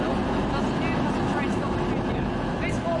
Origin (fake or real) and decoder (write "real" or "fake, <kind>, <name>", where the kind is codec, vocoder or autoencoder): real